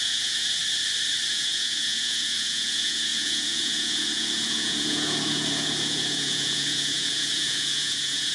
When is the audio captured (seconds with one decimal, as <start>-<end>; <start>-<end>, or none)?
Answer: 0.6-1.3